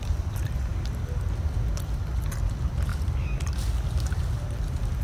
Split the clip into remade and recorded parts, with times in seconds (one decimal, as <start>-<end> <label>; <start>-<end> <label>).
0.0-2.9 recorded; 2.9-4.0 remade; 4.0-5.0 recorded